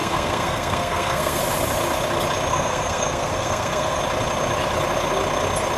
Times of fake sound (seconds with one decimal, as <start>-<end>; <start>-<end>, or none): 0.0-1.4; 2.5-4.0